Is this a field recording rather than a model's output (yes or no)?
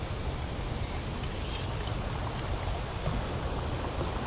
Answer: yes